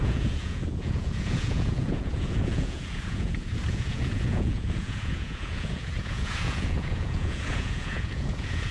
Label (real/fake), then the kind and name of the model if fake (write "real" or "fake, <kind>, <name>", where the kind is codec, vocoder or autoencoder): fake, vocoder, Vocos